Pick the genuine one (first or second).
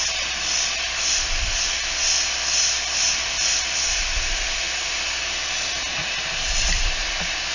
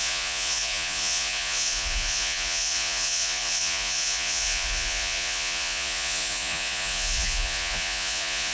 first